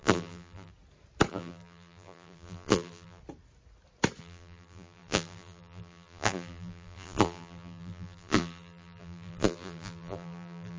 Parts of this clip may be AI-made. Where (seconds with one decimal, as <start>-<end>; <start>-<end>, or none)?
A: 0.0-0.7; 1.3-3.2; 4.2-10.8